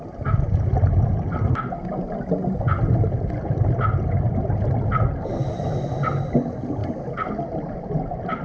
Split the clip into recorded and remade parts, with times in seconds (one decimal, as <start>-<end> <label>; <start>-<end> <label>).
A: 0.0-8.4 recorded